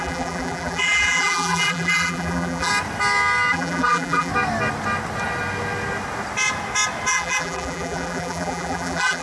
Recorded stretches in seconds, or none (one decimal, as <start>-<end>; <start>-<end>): 2.7-3.5; 4.3-7.1